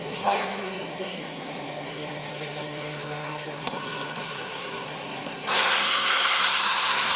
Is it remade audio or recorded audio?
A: remade